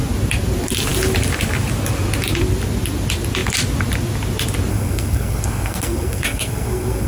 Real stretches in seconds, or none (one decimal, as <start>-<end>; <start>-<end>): 0.0-4.7